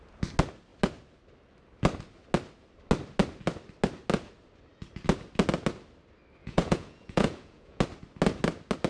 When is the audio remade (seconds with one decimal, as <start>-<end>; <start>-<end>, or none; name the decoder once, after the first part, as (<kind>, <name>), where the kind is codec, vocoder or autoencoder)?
6.4-7.8 (vocoder, Vocos)